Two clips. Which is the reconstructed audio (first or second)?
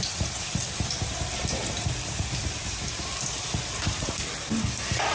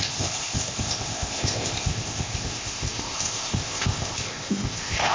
second